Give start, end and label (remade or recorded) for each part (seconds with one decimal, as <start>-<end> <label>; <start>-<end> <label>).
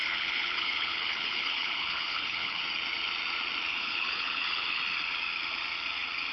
0.0-2.6 remade; 2.6-3.7 recorded; 3.7-4.8 remade; 4.8-6.3 recorded